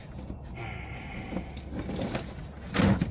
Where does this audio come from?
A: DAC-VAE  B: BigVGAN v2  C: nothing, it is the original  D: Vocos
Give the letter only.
C